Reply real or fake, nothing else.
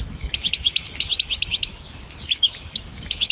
fake